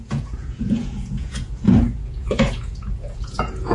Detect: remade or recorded remade